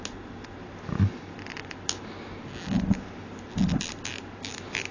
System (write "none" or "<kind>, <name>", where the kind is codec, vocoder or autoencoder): none